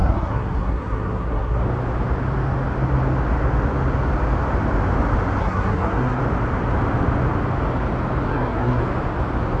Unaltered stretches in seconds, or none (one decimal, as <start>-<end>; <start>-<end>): 1.6-5.4; 6.2-8.3; 8.8-9.6

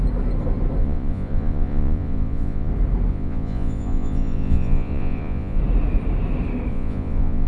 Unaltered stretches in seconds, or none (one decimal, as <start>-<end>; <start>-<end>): 0.0-0.8; 2.7-3.1; 5.6-6.7

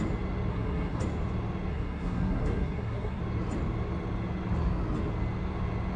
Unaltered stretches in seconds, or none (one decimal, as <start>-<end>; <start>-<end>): 0.0-0.5; 1.0-1.7; 3.2-6.0

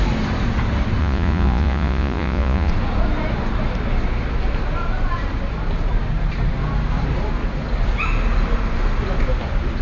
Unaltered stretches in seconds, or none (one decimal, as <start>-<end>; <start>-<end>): 0.0-1.0; 2.7-9.8

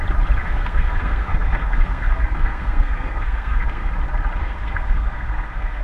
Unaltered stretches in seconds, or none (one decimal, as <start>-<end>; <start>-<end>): 0.0-0.4; 3.9-4.4